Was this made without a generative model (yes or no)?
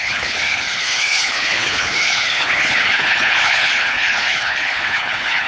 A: no